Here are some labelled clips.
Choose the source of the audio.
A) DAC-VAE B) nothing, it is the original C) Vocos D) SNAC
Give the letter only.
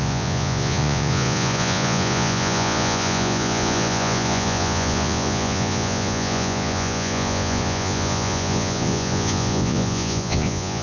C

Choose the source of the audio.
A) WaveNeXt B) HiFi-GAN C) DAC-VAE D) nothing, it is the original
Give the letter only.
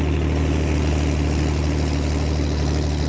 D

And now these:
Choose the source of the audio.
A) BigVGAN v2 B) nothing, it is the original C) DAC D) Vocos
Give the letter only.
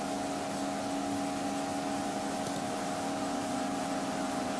B